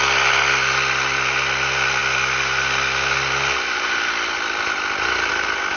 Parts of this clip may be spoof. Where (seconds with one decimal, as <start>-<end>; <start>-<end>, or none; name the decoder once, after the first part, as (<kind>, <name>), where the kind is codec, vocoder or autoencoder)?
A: none